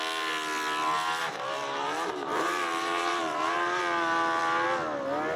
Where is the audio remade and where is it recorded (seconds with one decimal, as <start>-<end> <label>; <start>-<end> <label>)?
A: 0.0-1.2 recorded; 1.2-3.8 remade; 3.8-5.4 recorded

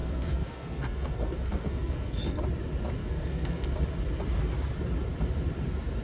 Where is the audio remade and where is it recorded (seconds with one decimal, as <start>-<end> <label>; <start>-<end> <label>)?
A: 0.0-2.4 remade; 2.4-3.0 recorded; 3.0-3.7 remade; 3.7-6.0 recorded

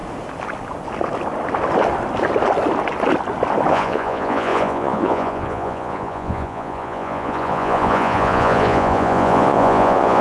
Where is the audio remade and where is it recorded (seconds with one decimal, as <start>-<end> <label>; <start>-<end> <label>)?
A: 0.0-3.7 recorded; 3.7-10.2 remade

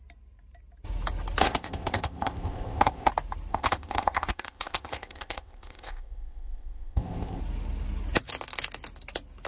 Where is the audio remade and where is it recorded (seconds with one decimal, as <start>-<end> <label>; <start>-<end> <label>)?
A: 0.0-1.4 recorded; 1.4-3.1 remade; 3.1-3.5 recorded; 3.5-7.4 remade; 7.4-9.5 recorded